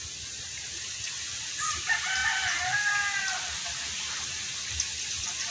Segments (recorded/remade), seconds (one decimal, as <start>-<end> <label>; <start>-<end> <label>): 0.0-5.5 recorded